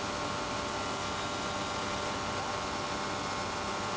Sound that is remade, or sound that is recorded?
recorded